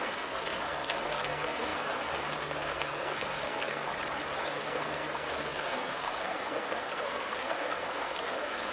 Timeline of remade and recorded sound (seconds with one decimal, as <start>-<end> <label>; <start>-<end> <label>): 0.0-3.9 remade; 3.9-4.4 recorded; 4.4-8.7 remade